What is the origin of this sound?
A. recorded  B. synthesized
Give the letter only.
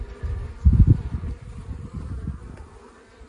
B